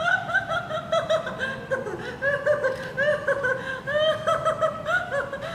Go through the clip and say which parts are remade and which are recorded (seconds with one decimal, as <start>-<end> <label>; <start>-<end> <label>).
0.0-5.5 recorded